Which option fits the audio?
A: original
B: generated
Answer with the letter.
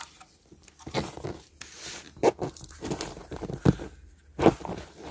A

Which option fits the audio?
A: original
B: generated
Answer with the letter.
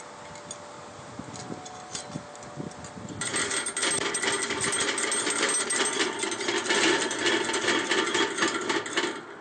A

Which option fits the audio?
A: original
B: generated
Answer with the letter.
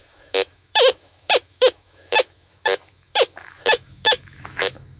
B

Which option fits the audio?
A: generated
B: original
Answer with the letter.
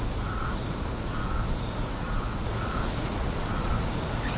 A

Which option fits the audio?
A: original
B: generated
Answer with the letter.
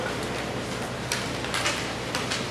A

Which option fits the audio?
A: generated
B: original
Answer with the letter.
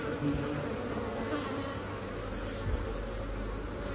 B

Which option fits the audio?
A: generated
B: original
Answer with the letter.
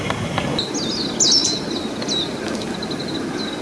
B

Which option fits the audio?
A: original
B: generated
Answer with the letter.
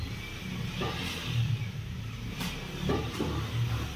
A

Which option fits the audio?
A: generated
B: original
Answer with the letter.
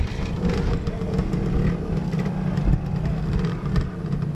B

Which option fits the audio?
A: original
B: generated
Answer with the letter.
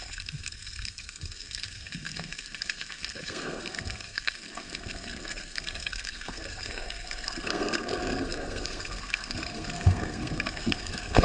B